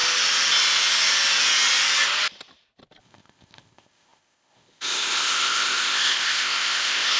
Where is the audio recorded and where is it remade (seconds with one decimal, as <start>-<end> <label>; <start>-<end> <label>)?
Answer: 0.0-3.0 recorded; 3.0-7.2 remade

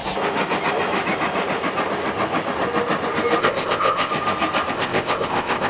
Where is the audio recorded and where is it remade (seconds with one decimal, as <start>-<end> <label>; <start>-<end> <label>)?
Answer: 0.0-3.4 recorded; 3.4-4.1 remade; 4.1-4.7 recorded; 4.7-5.7 remade

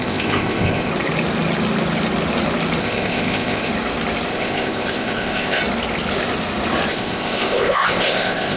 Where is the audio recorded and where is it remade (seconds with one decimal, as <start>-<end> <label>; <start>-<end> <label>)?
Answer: 0.0-0.9 remade; 0.9-2.8 recorded; 2.8-3.7 remade; 3.7-4.3 recorded; 4.3-5.6 remade; 5.6-6.9 recorded; 6.9-8.6 remade

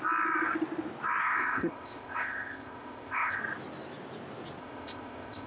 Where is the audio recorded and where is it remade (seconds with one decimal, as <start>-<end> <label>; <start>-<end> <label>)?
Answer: 0.0-1.2 recorded; 1.2-3.4 remade; 3.4-4.6 recorded; 4.6-5.5 remade

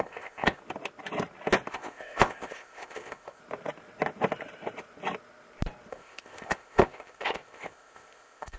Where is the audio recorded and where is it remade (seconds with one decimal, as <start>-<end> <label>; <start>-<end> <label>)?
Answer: 0.0-0.6 remade; 0.6-1.7 recorded; 1.7-3.4 remade; 3.4-5.9 recorded; 5.9-8.6 remade

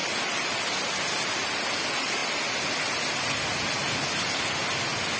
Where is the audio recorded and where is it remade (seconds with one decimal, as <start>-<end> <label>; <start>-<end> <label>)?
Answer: 0.0-5.2 recorded

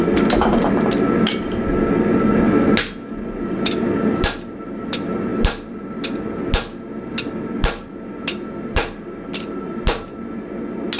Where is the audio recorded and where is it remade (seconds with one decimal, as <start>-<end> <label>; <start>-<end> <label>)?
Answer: 0.0-11.0 recorded

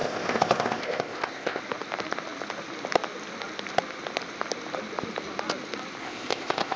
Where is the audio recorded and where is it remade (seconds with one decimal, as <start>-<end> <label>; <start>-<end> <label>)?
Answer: 0.0-1.6 remade; 1.6-6.0 recorded; 6.0-6.8 remade